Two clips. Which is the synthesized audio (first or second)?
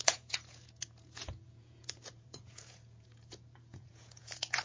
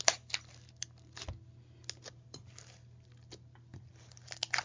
first